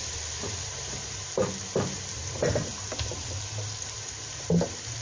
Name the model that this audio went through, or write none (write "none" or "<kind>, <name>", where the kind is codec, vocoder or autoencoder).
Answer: none